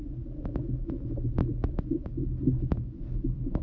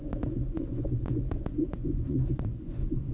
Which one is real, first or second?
first